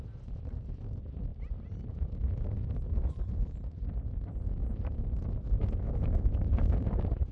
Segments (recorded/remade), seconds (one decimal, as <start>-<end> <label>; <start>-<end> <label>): 0.0-7.3 recorded